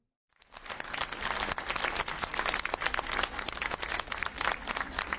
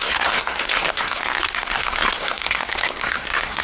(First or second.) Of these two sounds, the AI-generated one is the second